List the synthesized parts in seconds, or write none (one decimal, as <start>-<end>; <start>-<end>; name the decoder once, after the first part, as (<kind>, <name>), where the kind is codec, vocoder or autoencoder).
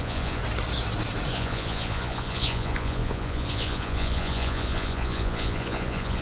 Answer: 0.0-0.4 (vocoder, Vocos); 1.3-6.2